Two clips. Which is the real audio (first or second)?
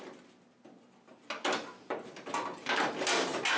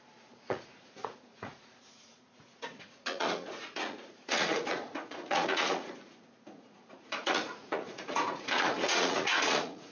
first